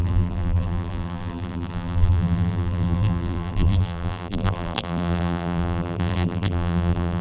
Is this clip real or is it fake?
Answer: fake